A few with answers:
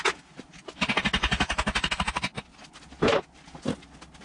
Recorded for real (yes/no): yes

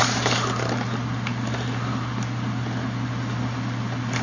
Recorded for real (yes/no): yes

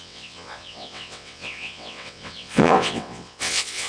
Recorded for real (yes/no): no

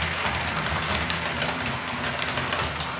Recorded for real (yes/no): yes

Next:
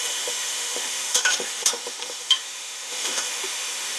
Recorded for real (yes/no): no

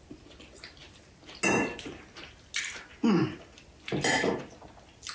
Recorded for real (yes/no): yes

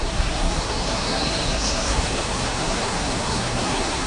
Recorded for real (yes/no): no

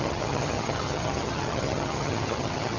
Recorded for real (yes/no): no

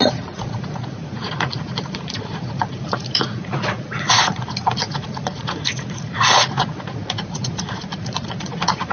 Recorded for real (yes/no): no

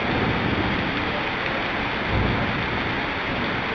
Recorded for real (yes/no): yes